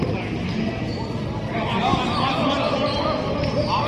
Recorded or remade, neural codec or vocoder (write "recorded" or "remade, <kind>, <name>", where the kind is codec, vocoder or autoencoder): recorded